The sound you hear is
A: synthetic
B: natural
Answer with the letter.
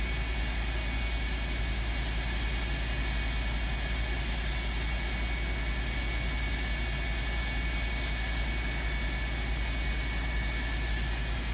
B